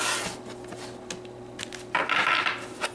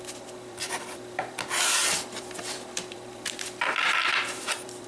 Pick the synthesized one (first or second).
second